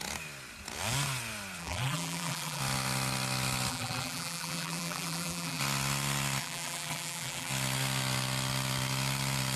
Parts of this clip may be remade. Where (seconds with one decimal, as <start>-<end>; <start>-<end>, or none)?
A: 1.6-2.6; 3.7-5.6; 6.4-7.5